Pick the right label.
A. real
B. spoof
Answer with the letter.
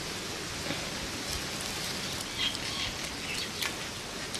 A